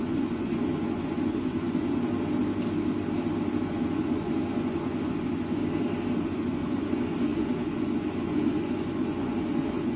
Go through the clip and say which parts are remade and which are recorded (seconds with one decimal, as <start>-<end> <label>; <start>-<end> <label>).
0.0-2.1 remade; 2.1-3.7 recorded; 3.7-5.6 remade; 5.6-6.2 recorded; 6.2-10.0 remade